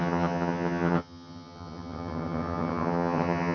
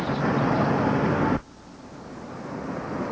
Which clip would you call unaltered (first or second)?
second